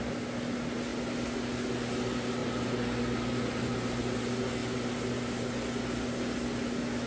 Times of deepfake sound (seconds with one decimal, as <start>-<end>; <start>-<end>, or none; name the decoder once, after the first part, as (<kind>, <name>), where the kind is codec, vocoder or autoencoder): none